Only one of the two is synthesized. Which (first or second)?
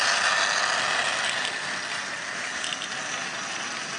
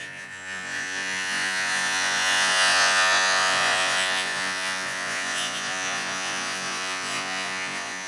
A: second